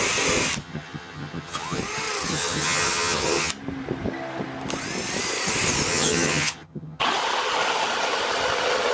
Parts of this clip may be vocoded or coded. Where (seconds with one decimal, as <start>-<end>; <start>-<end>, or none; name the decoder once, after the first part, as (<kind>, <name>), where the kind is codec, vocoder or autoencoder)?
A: 0.6-1.8 (vocoder, HiFi-GAN); 2.3-3.5; 5.9-7.0